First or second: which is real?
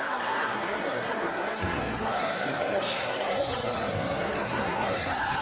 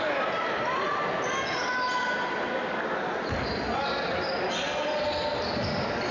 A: second